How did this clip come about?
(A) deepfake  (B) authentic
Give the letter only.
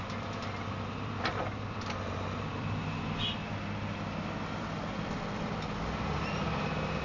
B